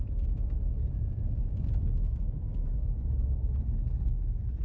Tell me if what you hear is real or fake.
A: real